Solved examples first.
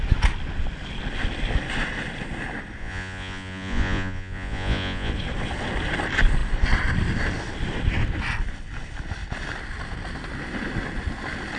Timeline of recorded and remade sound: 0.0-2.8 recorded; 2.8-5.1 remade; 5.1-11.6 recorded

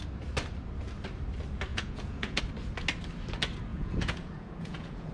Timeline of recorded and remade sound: 0.0-1.7 recorded; 1.7-2.4 remade; 2.4-3.7 recorded; 3.7-5.1 remade

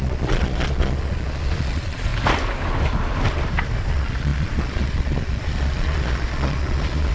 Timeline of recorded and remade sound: 0.0-2.1 remade; 2.1-3.9 recorded; 3.9-7.1 remade

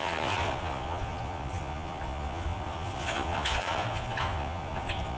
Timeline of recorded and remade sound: 0.0-5.2 remade

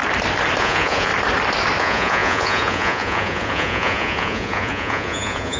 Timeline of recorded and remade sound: 0.0-0.6 recorded; 0.6-1.1 remade; 1.1-1.8 recorded; 1.8-5.6 remade

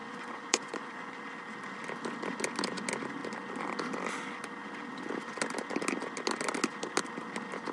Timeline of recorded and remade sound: 0.0-1.2 remade; 1.2-7.7 recorded